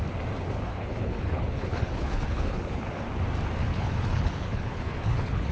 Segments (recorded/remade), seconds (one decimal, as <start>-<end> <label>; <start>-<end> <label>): 0.0-0.7 recorded; 0.7-3.0 remade; 3.0-3.6 recorded; 3.6-5.5 remade